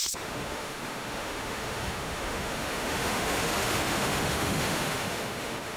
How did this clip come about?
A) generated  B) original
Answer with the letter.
A